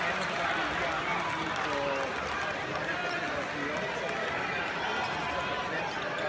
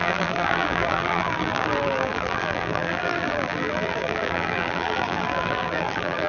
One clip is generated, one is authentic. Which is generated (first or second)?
second